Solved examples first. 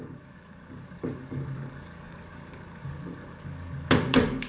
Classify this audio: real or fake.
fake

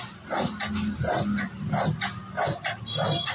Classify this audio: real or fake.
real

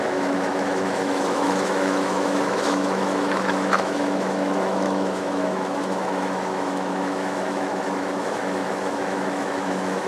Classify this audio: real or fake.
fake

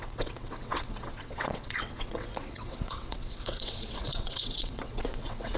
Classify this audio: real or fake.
fake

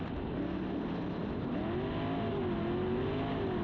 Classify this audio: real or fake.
real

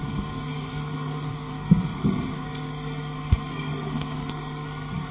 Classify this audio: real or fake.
fake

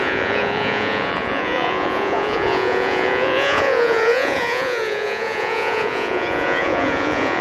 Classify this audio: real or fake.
fake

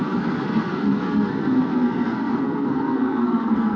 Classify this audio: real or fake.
fake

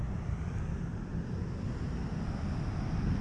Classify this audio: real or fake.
real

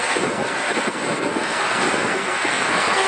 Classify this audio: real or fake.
fake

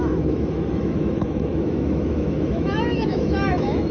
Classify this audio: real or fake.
fake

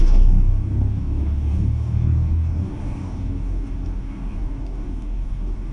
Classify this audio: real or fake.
fake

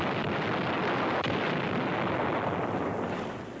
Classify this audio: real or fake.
real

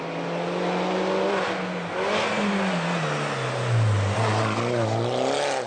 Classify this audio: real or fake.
real